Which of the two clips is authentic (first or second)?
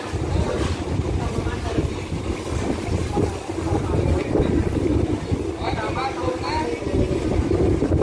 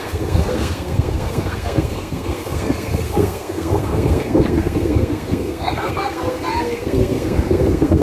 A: first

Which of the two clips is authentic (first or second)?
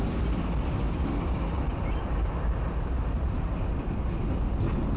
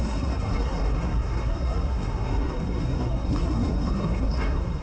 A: first